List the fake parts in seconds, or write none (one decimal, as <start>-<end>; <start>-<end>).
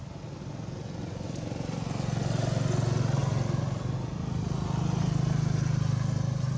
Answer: none